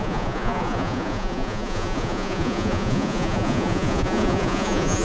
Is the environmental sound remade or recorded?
remade